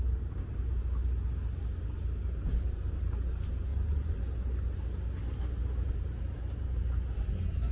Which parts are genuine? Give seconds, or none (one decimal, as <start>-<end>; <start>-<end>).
0.0-3.7; 4.2-7.7